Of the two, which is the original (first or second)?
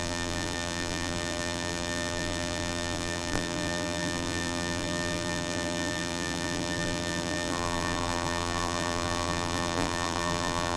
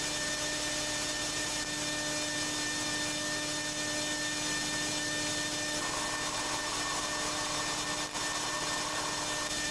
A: second